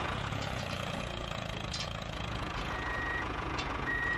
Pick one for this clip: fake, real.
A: fake